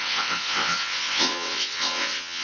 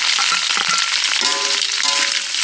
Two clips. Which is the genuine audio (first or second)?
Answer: second